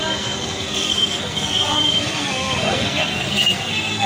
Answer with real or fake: fake